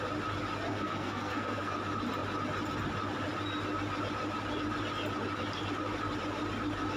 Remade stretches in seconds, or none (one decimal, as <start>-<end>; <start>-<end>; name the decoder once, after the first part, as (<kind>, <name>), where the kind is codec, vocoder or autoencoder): 0.7-1.7 (codec, SNAC)